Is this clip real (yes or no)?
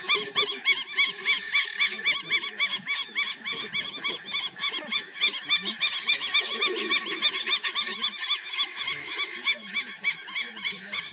no